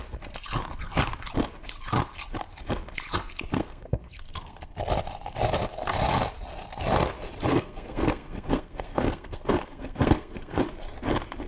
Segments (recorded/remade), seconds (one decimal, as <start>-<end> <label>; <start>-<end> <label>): 0.0-3.5 recorded; 3.5-4.7 remade; 4.7-7.5 recorded; 7.5-10.6 remade; 10.6-11.5 recorded